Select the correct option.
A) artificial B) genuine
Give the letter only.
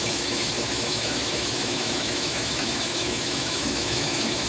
A